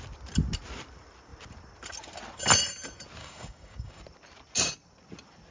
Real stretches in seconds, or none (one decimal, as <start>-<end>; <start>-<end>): 0.0-3.2; 4.0-5.5

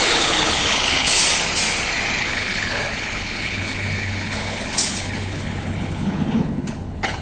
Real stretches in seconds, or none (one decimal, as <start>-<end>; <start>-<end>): 1.2-2.2

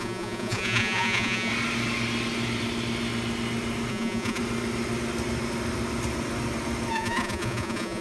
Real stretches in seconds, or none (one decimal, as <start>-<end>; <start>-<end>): 1.5-3.9; 4.4-6.9

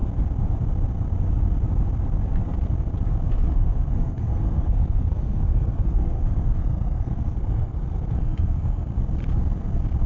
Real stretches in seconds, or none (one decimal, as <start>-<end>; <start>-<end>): 0.0-3.3; 8.9-10.1

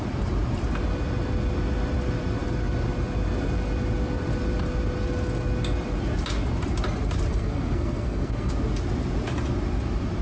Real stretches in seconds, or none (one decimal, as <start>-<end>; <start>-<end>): 0.0-7.3; 8.5-10.2